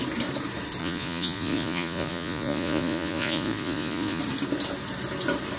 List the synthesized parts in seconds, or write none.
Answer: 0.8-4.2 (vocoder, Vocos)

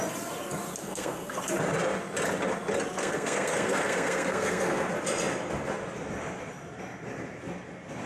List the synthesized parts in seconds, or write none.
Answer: 0.8-1.4 (codec, SNAC); 3.0-4.8

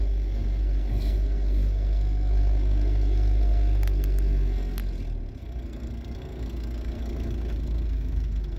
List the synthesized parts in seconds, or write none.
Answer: 0.0-4.8 (codec, SNAC); 5.4-8.6

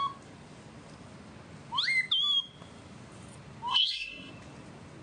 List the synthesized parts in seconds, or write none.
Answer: 3.7-4.3 (codec, SNAC)